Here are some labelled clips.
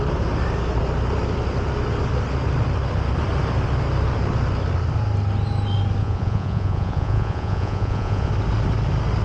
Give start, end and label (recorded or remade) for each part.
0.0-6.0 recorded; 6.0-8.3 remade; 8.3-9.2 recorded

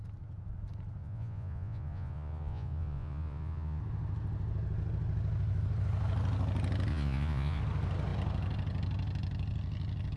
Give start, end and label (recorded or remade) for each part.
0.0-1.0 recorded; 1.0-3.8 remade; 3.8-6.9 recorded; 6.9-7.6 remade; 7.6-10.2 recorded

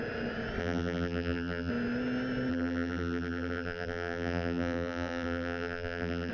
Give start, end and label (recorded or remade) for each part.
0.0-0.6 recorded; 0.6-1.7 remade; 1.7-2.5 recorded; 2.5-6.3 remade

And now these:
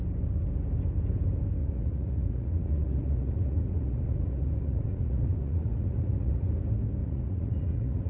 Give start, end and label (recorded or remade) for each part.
0.0-1.6 recorded; 1.6-6.5 remade; 6.5-7.0 recorded; 7.0-8.1 remade

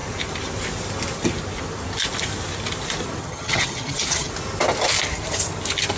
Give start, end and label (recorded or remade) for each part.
0.0-3.2 recorded; 3.2-4.3 remade; 4.3-6.0 recorded

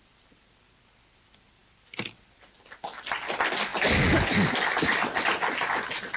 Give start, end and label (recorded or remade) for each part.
0.0-6.2 recorded

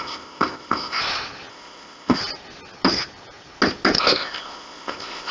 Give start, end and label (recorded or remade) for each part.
0.0-1.0 remade; 1.0-1.5 recorded; 1.5-2.2 remade; 2.2-4.0 recorded; 4.0-5.3 remade